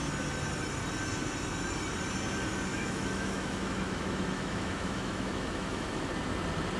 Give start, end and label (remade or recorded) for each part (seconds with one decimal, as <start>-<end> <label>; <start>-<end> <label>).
0.0-2.7 recorded; 2.7-6.1 remade; 6.1-6.8 recorded

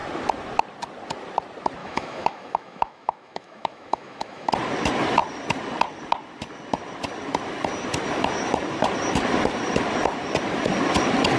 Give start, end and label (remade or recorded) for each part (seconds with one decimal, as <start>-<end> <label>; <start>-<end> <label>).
0.0-1.8 recorded; 1.8-4.5 remade; 4.5-11.4 recorded

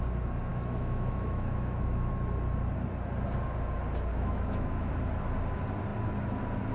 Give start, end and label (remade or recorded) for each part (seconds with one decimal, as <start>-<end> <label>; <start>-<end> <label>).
0.0-0.5 recorded; 0.5-2.1 remade; 2.1-4.1 recorded; 4.1-4.9 remade; 4.9-6.7 recorded

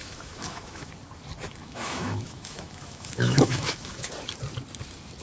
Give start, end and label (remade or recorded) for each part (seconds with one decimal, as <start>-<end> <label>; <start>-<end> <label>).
0.0-0.9 remade; 0.9-1.6 recorded; 1.6-4.1 remade; 4.1-5.2 recorded